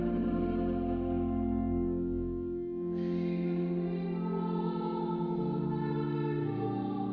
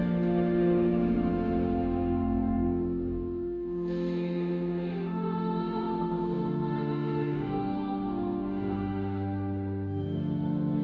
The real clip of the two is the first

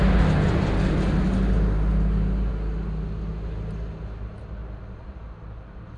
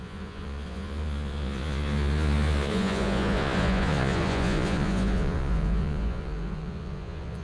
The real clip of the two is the first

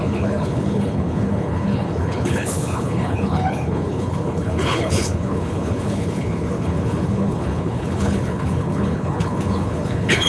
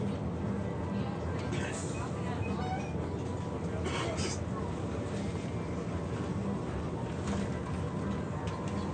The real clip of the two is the second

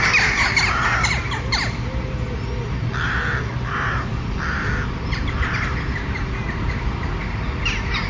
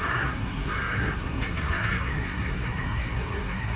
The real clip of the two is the first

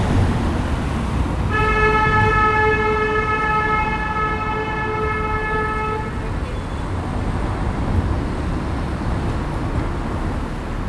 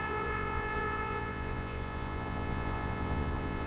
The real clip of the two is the first